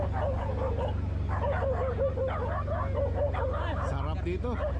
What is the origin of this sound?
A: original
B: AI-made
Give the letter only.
A